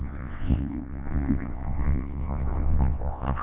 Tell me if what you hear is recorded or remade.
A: remade